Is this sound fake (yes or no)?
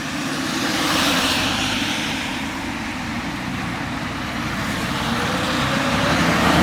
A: yes